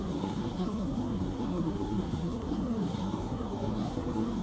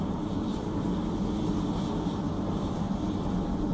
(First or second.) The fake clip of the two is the first